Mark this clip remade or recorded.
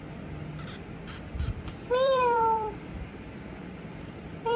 remade